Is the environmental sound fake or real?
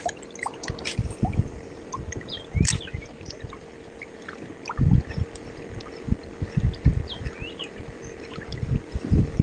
real